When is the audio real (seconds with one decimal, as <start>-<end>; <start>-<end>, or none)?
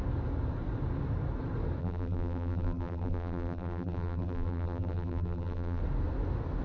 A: 0.0-1.8; 5.8-6.6